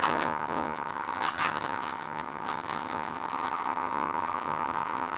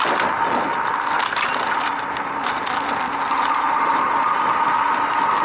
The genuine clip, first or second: second